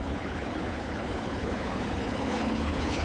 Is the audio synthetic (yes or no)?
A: yes